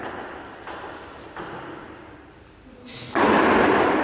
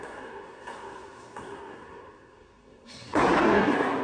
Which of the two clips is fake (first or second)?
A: second